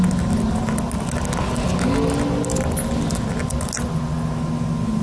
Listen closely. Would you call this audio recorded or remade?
recorded